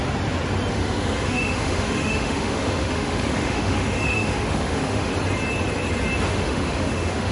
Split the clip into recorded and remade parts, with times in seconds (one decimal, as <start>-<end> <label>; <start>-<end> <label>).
0.0-0.7 recorded; 0.7-5.1 remade; 5.1-6.3 recorded; 6.3-7.3 remade